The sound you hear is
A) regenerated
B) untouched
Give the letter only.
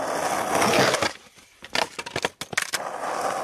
B